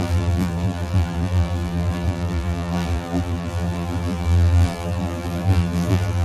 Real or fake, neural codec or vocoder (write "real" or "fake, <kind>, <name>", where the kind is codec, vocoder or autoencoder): fake, vocoder, BigVGAN v2